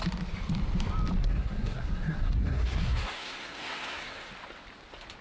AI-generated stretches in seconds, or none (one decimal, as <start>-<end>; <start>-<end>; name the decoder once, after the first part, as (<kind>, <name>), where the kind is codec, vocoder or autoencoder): 1.2-4.3 (codec, SNAC)